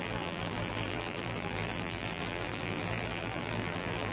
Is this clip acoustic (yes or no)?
no